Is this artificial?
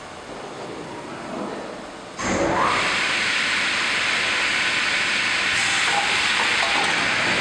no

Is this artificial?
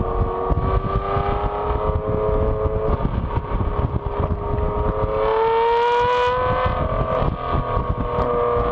no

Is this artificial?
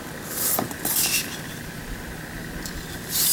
no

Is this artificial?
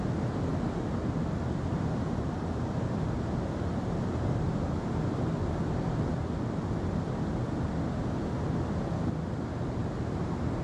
no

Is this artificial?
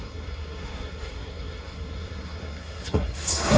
yes